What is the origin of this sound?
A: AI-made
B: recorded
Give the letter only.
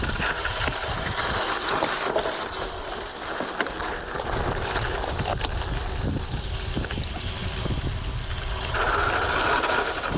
B